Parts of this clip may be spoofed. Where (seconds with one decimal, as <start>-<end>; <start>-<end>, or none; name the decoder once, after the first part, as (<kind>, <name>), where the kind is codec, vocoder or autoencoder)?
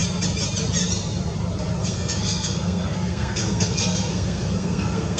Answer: 1.8-5.2 (codec, SNAC)